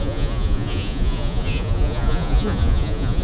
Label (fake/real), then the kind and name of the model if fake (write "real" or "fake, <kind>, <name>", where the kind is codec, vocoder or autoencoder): fake, vocoder, Vocos